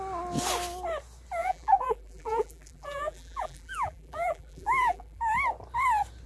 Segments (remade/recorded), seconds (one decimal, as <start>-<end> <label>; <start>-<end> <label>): 0.0-1.4 recorded; 1.4-5.2 remade; 5.2-6.3 recorded